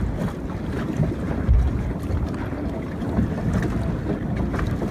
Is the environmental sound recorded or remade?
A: recorded